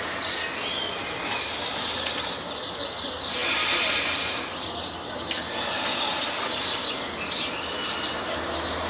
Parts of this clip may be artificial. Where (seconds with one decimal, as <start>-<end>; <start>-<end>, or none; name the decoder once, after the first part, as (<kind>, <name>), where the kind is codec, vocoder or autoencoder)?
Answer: none